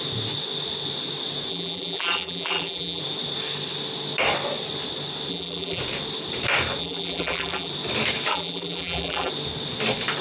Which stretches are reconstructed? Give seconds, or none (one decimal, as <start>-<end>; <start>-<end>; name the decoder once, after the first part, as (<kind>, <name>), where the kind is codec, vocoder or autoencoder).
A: 1.5-3.0 (vocoder, BigVGAN v2); 5.3-5.8; 6.8-7.7; 8.3-9.3